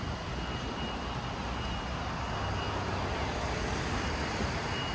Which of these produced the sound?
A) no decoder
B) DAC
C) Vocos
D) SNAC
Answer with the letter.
A